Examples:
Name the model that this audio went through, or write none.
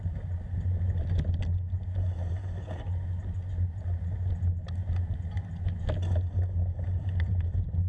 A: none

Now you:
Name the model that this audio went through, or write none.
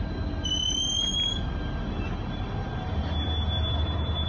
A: none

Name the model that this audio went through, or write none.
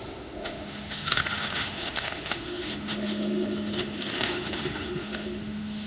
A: autoencoder, DAC-VAE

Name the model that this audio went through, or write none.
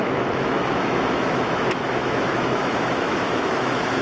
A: autoencoder, DAC-VAE